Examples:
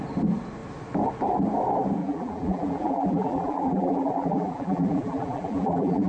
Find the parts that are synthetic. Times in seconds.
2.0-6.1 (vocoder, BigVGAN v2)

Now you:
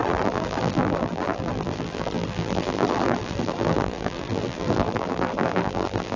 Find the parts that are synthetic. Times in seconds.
0.0-6.2 (vocoder, BigVGAN v2)

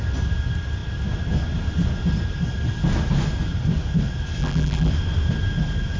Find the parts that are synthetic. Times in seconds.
4.4-4.9 (vocoder, BigVGAN v2)